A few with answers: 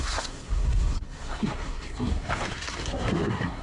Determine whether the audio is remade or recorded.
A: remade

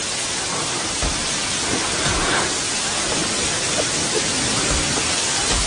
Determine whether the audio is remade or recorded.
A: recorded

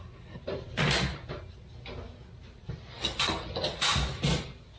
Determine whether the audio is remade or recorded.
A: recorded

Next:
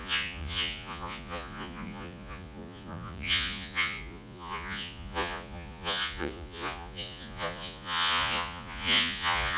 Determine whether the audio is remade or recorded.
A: remade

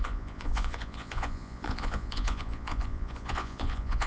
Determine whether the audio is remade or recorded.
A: remade